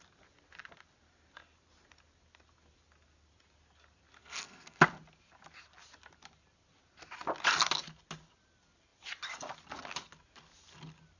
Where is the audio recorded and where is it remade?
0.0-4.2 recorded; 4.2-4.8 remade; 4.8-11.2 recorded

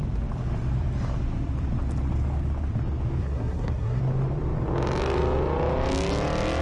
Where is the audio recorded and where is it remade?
0.0-3.2 recorded; 3.2-4.0 remade; 4.0-6.6 recorded

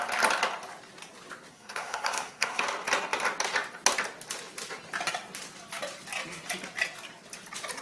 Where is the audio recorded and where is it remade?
0.0-1.5 recorded; 1.5-2.6 remade; 2.6-7.8 recorded

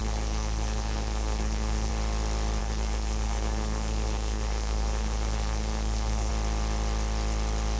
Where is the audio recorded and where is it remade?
0.0-1.9 remade; 1.9-2.6 recorded; 2.6-6.3 remade; 6.3-7.8 recorded

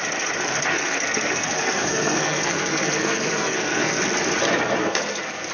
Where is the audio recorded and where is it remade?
0.0-0.7 recorded; 0.7-4.0 remade; 4.0-4.8 recorded; 4.8-5.5 remade

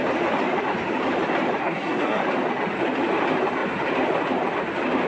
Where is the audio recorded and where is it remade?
0.0-1.6 recorded; 1.6-2.2 remade; 2.2-5.1 recorded

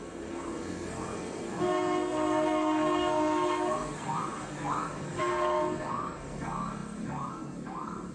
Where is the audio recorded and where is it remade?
0.0-8.1 remade